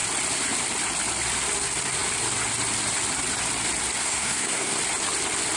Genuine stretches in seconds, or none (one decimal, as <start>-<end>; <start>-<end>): 0.0-4.0; 4.8-5.6